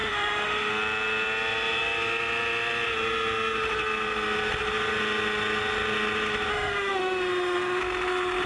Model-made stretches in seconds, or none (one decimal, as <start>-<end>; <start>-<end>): 0.0-0.7; 6.5-7.8